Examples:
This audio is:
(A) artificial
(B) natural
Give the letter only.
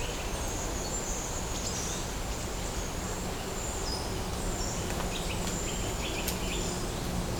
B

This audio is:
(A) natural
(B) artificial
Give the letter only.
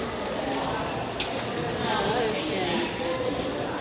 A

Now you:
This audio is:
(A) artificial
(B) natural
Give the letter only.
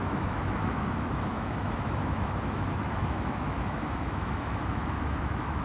A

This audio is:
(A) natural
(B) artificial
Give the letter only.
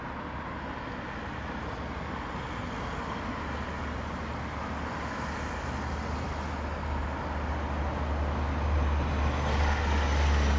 A